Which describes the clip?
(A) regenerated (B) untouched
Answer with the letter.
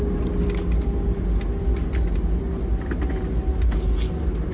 B